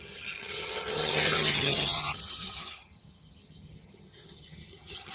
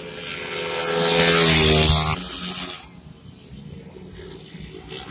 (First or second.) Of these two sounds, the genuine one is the second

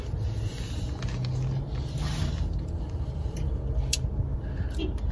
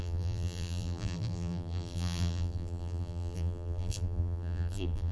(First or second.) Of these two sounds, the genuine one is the first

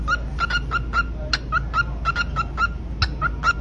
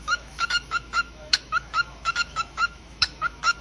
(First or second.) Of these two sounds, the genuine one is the first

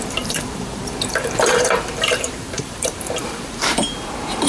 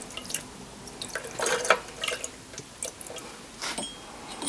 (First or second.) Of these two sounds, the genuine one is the second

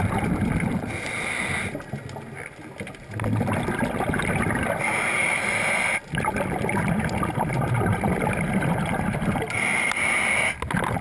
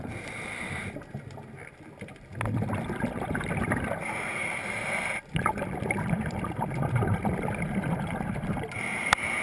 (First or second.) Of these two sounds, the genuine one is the first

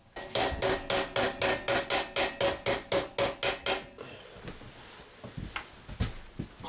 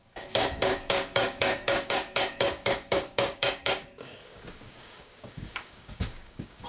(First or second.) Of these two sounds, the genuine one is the first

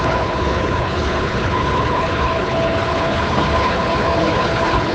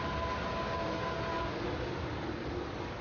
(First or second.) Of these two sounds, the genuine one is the second